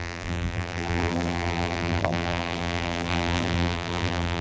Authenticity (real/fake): fake